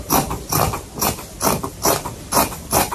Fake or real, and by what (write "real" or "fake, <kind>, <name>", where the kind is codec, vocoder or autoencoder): fake, vocoder, BigVGAN v2